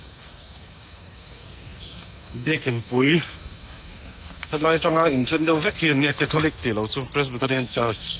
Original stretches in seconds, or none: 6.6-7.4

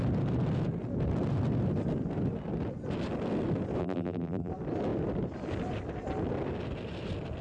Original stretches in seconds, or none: 0.0-3.8; 4.5-7.4

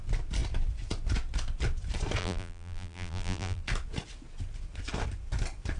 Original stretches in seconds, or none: 0.0-2.2; 3.6-5.8

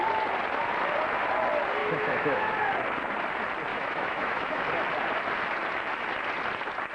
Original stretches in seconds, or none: 0.0-1.8; 2.5-3.7; 4.6-6.9

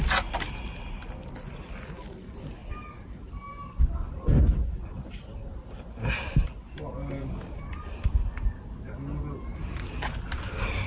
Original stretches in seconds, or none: 0.0-9.5; 10.4-10.9

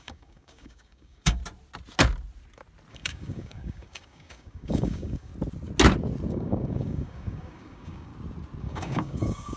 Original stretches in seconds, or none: 1.4-2.9; 5.3-6.3; 8.1-8.6